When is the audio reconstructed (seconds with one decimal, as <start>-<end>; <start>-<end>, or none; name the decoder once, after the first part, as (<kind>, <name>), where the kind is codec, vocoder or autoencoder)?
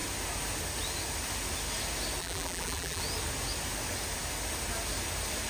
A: 2.2-3.0 (vocoder, BigVGAN v2)